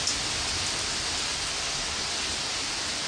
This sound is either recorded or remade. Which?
recorded